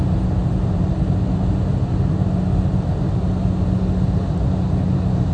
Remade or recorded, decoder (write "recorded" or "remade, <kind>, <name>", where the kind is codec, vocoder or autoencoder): recorded